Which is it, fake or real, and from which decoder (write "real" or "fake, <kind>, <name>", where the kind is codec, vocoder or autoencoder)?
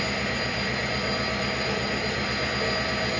real